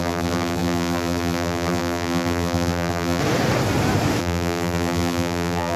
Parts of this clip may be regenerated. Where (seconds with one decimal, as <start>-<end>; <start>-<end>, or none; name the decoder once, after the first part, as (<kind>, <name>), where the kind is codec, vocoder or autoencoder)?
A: 0.0-3.2 (vocoder, BigVGAN v2); 4.2-5.8